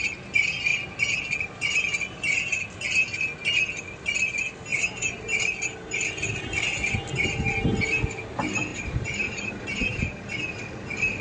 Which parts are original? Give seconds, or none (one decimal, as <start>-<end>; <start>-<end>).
0.0-4.7; 5.5-8.7; 10.4-11.2

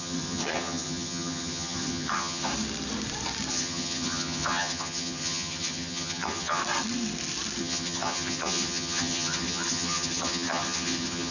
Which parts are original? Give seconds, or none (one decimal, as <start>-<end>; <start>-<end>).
2.5-3.5; 6.6-7.6

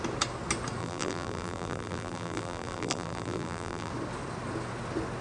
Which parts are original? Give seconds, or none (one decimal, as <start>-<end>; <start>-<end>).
0.0-0.8; 3.9-5.2

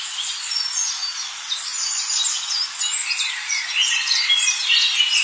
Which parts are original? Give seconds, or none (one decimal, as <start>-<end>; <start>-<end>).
0.0-3.0; 4.3-5.2

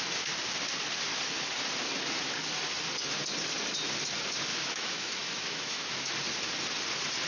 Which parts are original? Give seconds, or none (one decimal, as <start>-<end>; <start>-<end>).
0.0-4.5; 6.1-7.3

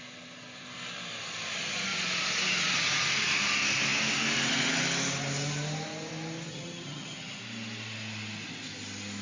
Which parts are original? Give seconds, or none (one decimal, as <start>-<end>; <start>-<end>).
0.0-6.5; 7.4-9.2

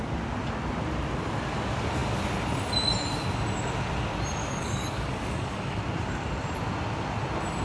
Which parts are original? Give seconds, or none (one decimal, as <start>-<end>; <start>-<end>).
0.0-4.4; 5.8-7.6

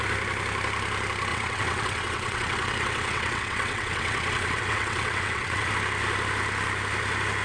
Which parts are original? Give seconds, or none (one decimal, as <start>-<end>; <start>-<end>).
0.0-1.3; 5.7-7.4